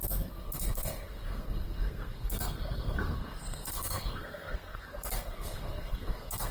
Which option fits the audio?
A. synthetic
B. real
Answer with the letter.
A